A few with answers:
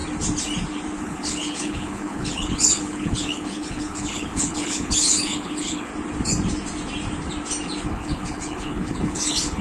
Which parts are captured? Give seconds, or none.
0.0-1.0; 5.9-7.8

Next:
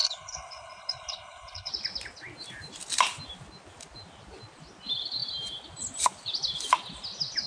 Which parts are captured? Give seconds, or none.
1.7-7.5

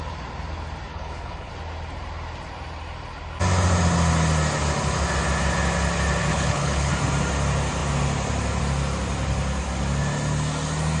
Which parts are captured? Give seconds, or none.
0.0-0.9; 1.5-6.3; 6.9-11.0